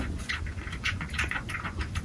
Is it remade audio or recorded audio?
remade